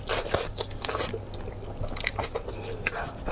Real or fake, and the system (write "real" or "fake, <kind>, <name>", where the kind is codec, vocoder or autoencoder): real